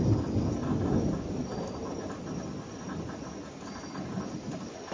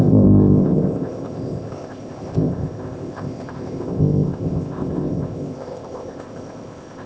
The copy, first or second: second